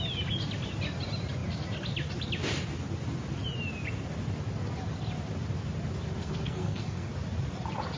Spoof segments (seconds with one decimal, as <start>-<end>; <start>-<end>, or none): 6.2-7.1